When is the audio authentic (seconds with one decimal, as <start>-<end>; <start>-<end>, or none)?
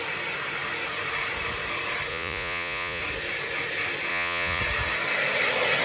0.0-2.1; 3.0-4.1; 4.6-5.8